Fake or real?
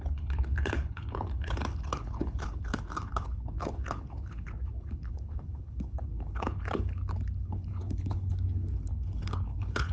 fake